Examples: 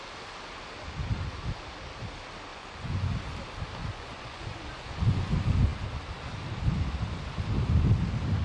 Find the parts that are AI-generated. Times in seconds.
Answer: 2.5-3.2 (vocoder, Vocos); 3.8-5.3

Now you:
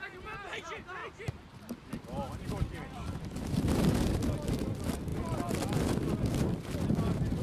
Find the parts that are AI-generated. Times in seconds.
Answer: 1.0-3.9 (vocoder, BigVGAN v2)

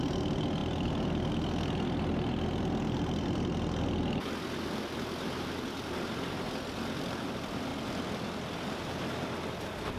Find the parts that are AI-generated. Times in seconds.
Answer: 7.7-9.0 (vocoder, BigVGAN v2)

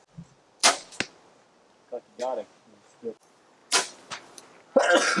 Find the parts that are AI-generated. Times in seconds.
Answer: none

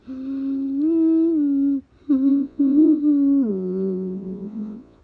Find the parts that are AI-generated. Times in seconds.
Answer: 2.3-3.0 (vocoder, Vocos); 3.5-5.0